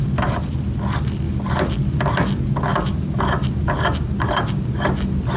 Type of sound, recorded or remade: recorded